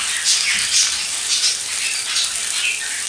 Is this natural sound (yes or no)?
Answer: yes